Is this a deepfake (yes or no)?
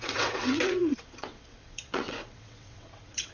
yes